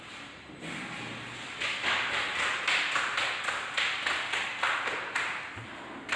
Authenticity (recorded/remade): recorded